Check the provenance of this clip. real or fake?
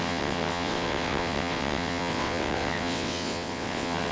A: fake